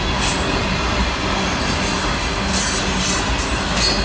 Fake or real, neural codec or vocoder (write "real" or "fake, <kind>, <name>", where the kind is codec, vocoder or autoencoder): real